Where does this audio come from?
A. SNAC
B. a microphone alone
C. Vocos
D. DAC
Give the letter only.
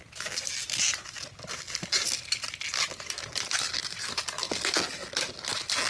B